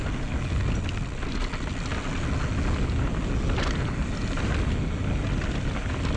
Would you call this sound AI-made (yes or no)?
no